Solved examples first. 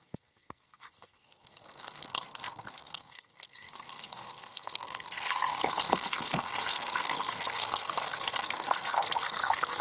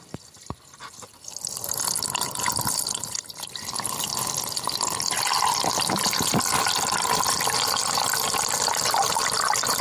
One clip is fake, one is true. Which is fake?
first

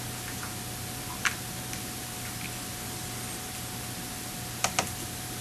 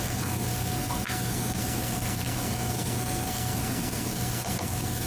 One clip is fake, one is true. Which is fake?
second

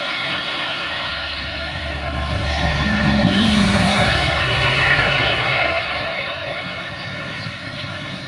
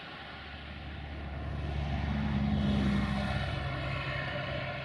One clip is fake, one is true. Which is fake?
first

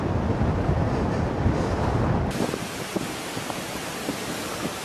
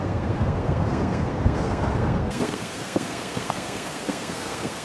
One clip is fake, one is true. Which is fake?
second